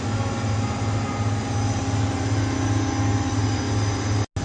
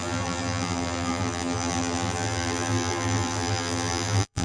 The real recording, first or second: first